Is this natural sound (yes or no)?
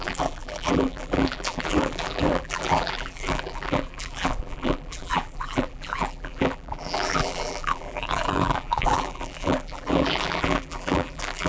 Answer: no